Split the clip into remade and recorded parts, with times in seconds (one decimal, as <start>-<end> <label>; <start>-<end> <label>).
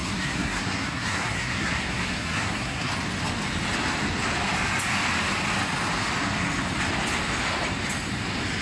0.0-2.9 remade; 2.9-8.6 recorded